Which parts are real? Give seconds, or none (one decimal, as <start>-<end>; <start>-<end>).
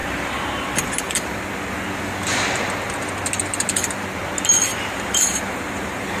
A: 0.0-4.7